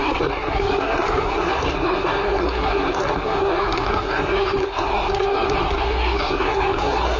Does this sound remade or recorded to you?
remade